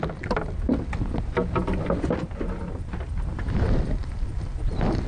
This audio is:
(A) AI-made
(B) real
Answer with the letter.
B